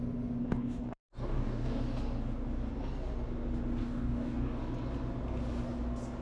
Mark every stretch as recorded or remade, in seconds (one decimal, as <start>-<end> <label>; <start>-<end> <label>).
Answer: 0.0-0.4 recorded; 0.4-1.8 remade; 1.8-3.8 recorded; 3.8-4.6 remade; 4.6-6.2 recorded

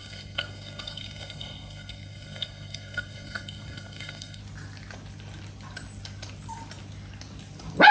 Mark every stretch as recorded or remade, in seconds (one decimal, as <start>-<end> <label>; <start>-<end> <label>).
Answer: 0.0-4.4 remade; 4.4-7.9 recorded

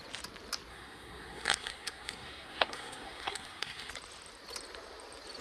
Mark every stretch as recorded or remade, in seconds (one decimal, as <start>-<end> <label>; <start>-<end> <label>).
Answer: 0.0-0.7 recorded; 0.7-3.9 remade; 3.9-5.4 recorded

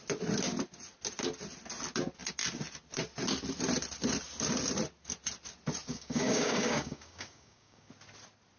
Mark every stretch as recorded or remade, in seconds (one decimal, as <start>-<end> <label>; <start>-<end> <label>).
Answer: 0.0-5.9 recorded; 5.9-7.9 remade; 7.9-8.6 recorded

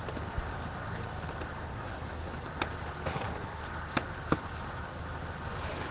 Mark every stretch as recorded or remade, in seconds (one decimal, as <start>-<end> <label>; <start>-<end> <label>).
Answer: 0.0-1.7 recorded; 1.7-2.3 remade; 2.3-3.1 recorded; 3.1-3.6 remade; 3.6-5.9 recorded

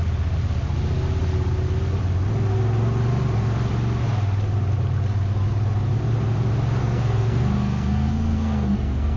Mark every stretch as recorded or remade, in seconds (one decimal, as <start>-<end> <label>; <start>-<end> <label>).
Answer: 0.0-6.8 recorded; 6.8-9.2 remade